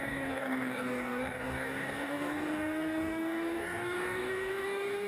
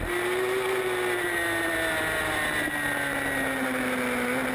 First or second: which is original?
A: second